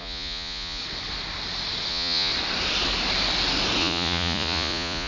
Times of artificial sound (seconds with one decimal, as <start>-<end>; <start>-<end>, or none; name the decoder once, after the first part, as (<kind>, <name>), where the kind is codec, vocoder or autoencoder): 0.0-0.8 (vocoder, Vocos); 1.9-2.3; 3.8-5.1